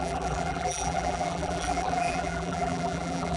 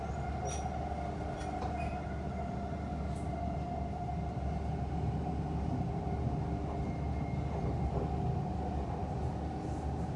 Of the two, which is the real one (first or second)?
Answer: second